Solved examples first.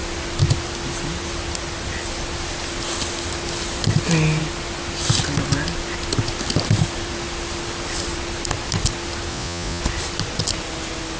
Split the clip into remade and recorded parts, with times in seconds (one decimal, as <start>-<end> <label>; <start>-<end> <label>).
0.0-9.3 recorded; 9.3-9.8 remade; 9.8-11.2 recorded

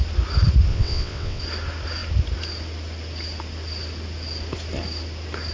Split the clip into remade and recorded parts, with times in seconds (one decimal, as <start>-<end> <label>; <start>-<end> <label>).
0.0-0.7 recorded; 0.7-1.4 remade; 1.4-5.5 recorded

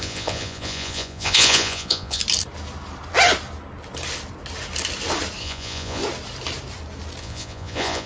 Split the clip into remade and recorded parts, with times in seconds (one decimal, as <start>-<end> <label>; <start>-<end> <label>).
0.0-2.2 remade; 2.2-5.4 recorded; 5.4-6.0 remade; 6.0-7.2 recorded; 7.2-8.1 remade

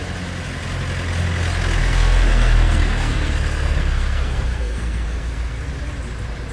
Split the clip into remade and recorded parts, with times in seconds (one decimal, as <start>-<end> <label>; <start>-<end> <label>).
0.0-1.8 recorded; 1.8-5.7 remade; 5.7-6.5 recorded

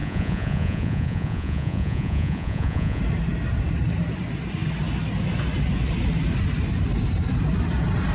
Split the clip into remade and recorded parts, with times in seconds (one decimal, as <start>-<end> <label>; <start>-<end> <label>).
0.0-3.0 remade; 3.0-8.1 recorded

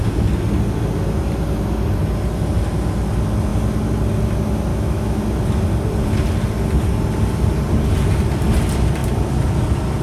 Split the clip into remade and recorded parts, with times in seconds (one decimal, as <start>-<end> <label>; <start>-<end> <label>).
0.0-4.7 recorded; 4.7-5.2 remade; 5.2-10.0 recorded